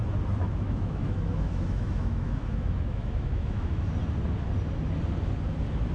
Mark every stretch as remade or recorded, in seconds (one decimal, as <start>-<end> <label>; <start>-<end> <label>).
0.0-0.4 recorded; 0.4-3.9 remade; 3.9-5.9 recorded